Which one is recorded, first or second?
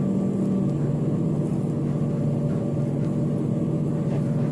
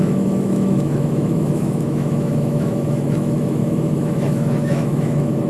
first